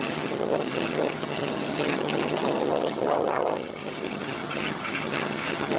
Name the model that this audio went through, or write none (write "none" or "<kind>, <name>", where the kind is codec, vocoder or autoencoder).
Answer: vocoder, HiFi-GAN